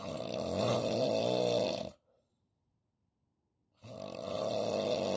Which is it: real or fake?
fake